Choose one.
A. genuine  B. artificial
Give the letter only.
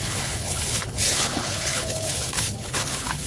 B